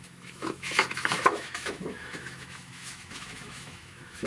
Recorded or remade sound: remade